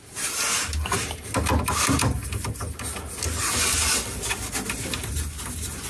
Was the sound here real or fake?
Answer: real